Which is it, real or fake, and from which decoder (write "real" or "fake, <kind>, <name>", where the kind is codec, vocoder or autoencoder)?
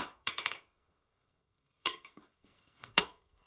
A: fake, codec, SNAC